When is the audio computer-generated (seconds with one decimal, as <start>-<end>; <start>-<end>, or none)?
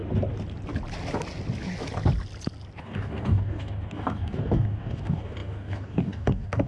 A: 2.8-6.7